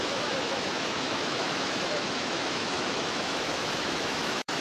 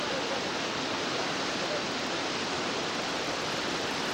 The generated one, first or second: first